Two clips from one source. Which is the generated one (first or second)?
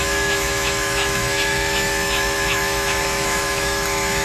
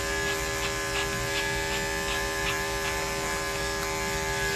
first